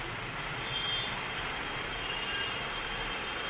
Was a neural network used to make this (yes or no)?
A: yes